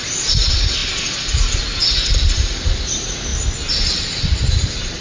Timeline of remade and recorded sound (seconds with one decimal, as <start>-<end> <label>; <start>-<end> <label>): 0.0-5.0 recorded